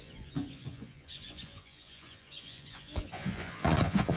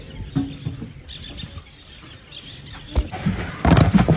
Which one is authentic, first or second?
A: second